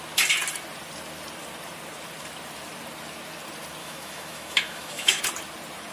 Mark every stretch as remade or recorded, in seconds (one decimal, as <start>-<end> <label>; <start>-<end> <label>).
0.0-3.8 recorded; 3.8-5.2 remade; 5.2-5.9 recorded